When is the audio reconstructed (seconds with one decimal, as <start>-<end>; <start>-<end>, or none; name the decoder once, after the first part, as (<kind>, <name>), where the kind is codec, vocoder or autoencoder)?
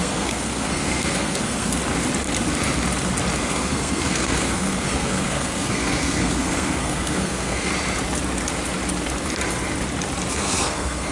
0.0-1.8 (codec, SNAC); 3.4-7.7; 10.3-11.1